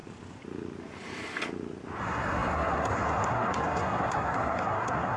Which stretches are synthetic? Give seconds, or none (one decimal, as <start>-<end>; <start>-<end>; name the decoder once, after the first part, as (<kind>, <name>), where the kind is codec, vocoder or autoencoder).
2.0-5.2 (codec, SNAC)